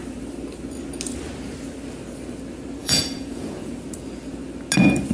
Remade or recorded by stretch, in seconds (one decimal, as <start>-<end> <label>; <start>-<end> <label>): 0.0-2.8 recorded; 2.8-3.7 remade; 3.7-5.1 recorded